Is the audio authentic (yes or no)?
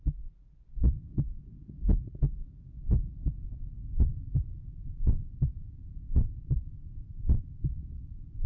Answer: yes